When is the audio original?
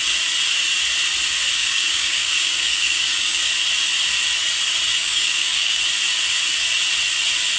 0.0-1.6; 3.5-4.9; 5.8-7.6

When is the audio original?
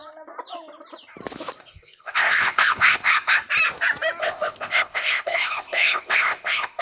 0.0-1.6; 3.4-4.2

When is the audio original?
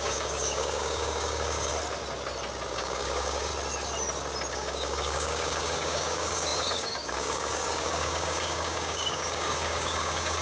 1.7-2.7; 3.5-4.5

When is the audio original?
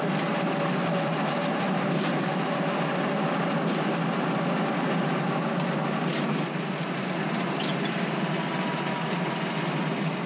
0.0-0.7; 2.7-10.3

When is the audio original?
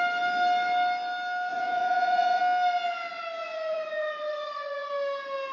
0.0-1.5; 2.4-3.4; 4.9-5.5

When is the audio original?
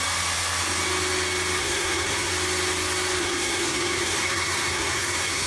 0.0-1.6; 2.3-3.2